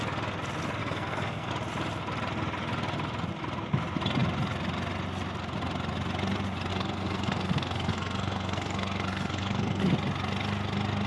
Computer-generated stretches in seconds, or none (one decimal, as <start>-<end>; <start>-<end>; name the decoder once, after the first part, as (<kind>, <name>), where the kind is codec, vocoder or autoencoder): 0.8-1.5 (codec, SNAC); 6.7-9.8